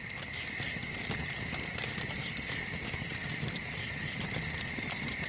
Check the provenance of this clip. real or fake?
real